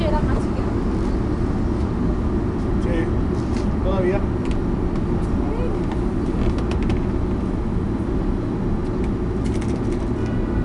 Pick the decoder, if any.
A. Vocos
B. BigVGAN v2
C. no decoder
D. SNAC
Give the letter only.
C